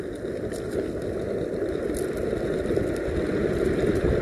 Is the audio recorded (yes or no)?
yes